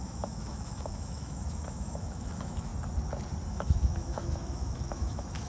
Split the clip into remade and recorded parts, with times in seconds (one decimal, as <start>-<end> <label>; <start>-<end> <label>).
0.0-2.7 remade; 2.7-3.5 recorded; 3.5-5.5 remade